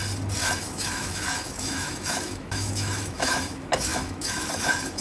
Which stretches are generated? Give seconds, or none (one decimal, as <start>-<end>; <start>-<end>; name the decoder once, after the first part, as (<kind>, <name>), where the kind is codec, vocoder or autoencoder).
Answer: 0.6-5.0 (autoencoder, DAC-VAE)